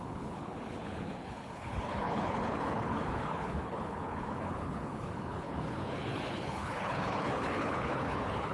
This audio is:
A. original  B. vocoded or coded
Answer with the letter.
B